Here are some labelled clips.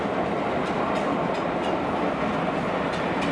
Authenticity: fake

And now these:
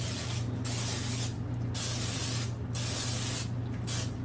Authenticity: real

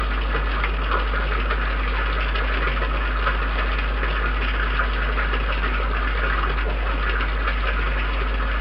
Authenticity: real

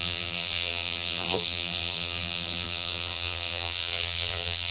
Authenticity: fake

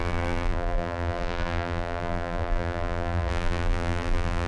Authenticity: fake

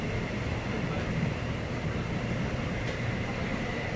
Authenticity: fake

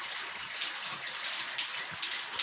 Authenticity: real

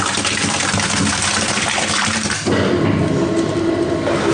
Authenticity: real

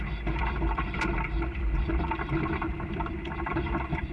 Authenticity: fake